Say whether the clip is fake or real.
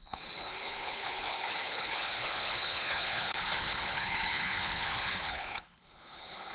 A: fake